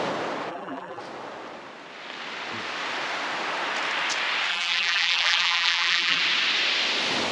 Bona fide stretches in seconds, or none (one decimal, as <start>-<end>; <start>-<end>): 0.0-0.5; 1.0-4.5; 6.2-7.3